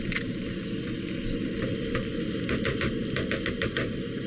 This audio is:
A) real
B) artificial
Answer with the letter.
A